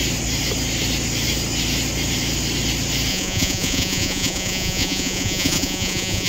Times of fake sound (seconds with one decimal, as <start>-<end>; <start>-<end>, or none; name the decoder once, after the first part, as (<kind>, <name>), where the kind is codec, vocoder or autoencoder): 3.1-6.3 (vocoder, Vocos)